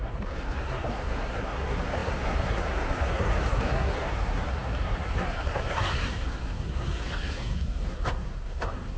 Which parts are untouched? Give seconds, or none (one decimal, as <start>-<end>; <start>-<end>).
none